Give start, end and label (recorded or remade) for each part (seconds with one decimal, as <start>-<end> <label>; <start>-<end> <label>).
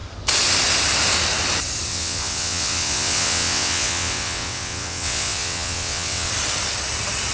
0.0-1.9 recorded; 1.9-6.3 remade; 6.3-7.3 recorded